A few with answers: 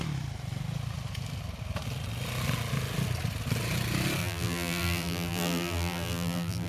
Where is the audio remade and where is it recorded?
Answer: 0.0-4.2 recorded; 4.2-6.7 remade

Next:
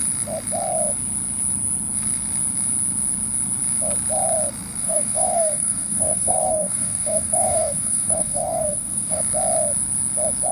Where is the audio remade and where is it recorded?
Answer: 0.0-4.8 recorded; 4.8-9.2 remade; 9.2-10.5 recorded

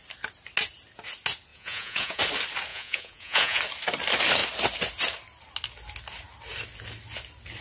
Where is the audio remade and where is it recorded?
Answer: 0.0-1.5 recorded; 1.5-2.2 remade; 2.2-2.7 recorded; 2.7-3.6 remade; 3.6-7.6 recorded